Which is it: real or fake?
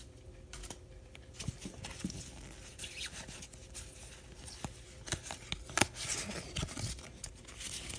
real